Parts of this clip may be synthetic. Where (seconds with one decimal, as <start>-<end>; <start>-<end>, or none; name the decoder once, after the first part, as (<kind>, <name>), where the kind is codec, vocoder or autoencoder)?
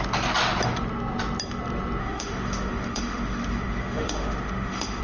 2.0-5.0 (autoencoder, DAC-VAE)